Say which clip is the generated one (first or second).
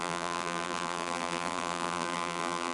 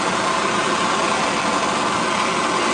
first